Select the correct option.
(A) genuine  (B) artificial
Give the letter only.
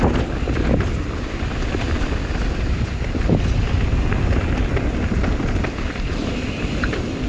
A